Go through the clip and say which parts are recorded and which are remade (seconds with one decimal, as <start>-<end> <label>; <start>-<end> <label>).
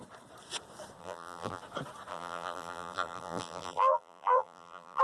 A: 0.0-1.0 recorded; 1.0-1.6 remade; 1.6-2.1 recorded; 2.1-5.0 remade